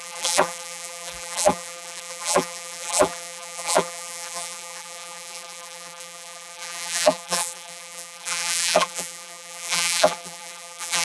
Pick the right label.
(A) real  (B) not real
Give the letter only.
B